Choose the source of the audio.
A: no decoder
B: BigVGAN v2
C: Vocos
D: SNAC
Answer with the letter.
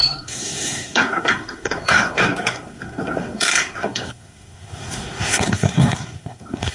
D